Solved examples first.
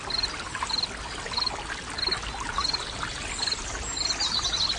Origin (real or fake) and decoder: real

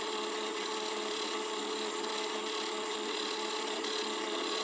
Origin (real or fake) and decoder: fake, vocoder, Vocos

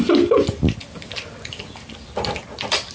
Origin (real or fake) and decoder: real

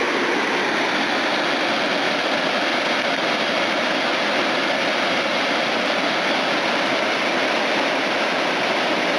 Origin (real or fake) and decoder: real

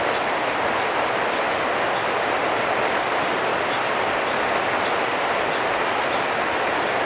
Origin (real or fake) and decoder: real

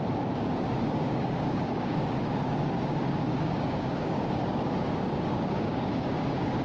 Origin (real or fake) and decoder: fake, codec, DAC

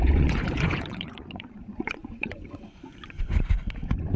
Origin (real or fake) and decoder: fake, vocoder, Vocos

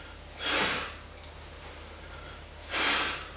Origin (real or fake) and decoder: real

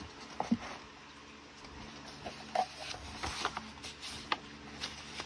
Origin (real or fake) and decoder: real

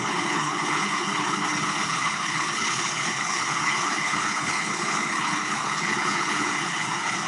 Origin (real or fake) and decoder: fake, codec, HILCodec